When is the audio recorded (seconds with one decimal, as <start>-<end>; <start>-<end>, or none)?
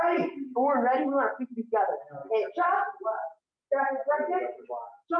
0.0-5.2